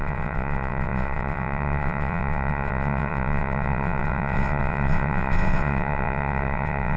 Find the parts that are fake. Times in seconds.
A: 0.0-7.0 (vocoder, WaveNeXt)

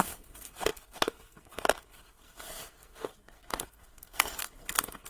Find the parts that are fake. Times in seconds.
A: 0.0-5.1 (codec, SNAC)